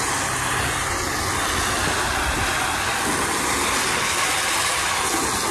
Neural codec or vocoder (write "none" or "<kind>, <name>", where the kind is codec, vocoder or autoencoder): none